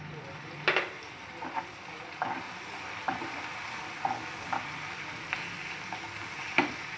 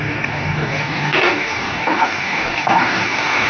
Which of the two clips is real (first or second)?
first